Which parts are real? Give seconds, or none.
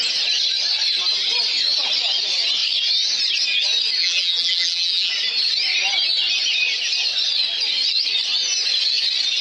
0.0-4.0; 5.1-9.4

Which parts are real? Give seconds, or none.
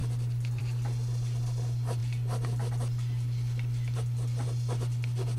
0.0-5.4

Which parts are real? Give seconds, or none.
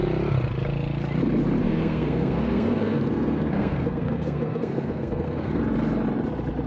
0.0-1.6; 5.6-6.7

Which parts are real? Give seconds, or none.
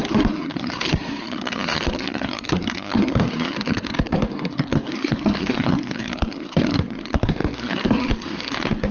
none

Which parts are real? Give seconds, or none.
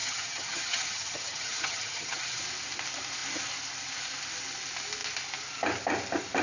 2.4-6.4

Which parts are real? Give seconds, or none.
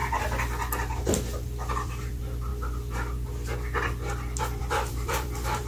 0.0-1.7; 2.5-4.4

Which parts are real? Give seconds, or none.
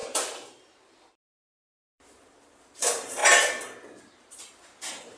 3.2-4.0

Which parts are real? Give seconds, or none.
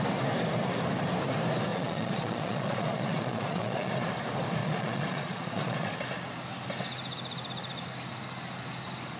0.0-1.7; 4.1-4.6; 6.0-9.2